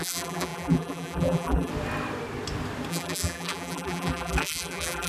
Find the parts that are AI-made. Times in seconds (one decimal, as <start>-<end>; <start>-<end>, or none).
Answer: 0.0-1.7; 2.9-5.1

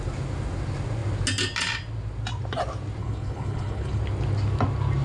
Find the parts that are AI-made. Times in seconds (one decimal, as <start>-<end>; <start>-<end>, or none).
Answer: 3.0-4.0

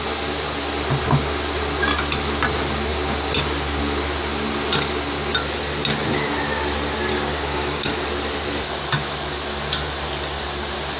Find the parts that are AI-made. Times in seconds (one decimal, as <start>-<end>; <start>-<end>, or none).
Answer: 7.1-7.9

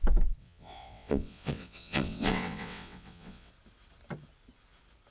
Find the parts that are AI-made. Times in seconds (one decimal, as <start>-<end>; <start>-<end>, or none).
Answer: 0.4-3.5

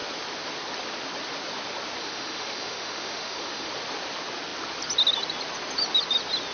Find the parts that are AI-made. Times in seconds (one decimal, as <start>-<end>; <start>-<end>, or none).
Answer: 2.0-3.7

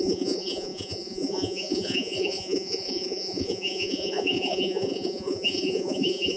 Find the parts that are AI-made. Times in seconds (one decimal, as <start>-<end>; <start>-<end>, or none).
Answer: 0.0-6.4

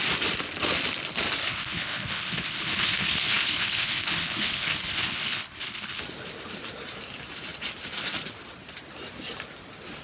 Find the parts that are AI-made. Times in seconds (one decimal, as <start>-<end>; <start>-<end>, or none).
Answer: 1.4-6.0

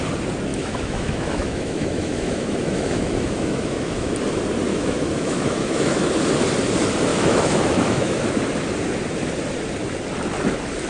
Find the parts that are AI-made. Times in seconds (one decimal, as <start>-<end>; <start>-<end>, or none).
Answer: 0.5-4.1; 4.7-6.1; 7.1-8.2